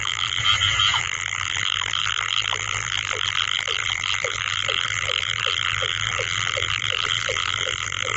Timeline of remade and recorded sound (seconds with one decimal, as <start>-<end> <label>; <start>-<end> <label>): 0.0-0.4 remade; 0.4-1.0 recorded; 1.0-8.2 remade